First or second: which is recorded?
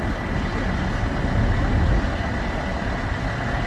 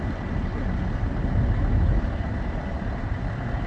first